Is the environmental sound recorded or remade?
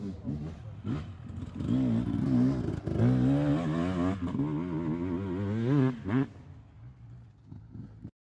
recorded